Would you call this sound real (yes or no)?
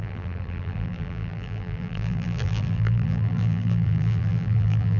no